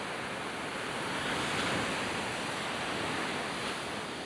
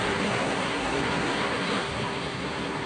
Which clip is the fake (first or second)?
second